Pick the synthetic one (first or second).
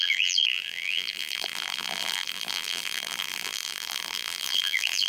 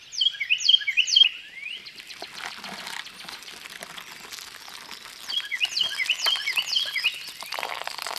first